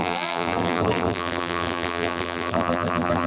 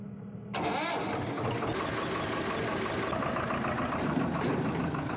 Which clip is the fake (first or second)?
first